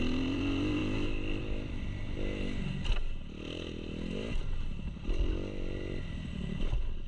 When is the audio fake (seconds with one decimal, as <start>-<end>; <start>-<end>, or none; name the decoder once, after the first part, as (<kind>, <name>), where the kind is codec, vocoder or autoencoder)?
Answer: none